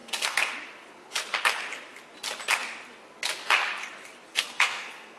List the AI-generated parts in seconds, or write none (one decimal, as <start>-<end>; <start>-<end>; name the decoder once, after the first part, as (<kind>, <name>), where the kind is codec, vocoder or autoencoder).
0.0-0.5 (codec, SNAC); 4.3-5.2